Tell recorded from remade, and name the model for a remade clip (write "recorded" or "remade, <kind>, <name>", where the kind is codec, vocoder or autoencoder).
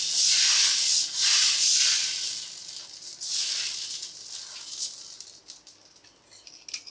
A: recorded